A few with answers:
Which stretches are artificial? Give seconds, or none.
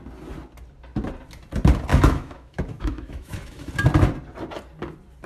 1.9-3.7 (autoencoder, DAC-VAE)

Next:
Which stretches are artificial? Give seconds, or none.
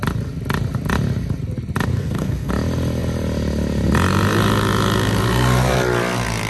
1.9-2.5 (codec, SNAC)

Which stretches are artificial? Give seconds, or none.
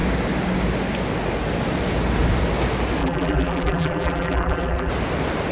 3.0-4.9 (vocoder, BigVGAN v2)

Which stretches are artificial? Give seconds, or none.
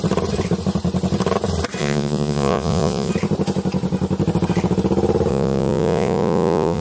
1.8-3.1 (vocoder, Vocos); 5.3-6.8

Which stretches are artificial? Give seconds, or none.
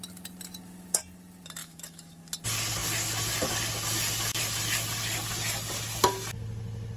1.6-2.2 (autoencoder, DAC-VAE)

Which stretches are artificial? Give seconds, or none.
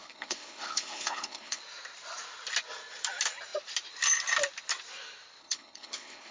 0.0-1.6 (codec, HILCodec); 5.4-6.3